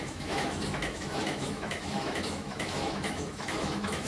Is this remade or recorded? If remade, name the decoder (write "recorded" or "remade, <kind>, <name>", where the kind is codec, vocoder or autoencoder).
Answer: remade, autoencoder, DAC-VAE